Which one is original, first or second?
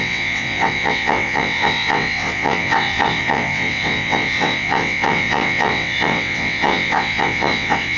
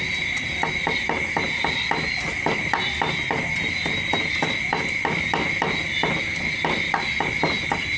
second